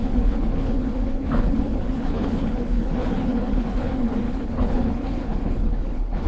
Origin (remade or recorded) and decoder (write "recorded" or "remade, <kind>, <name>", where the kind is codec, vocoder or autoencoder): remade, codec, HILCodec